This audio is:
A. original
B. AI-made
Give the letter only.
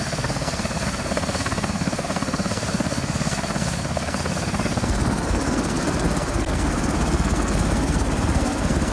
B